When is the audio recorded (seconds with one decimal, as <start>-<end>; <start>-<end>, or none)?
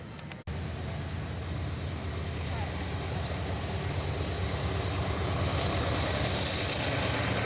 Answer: 0.0-7.5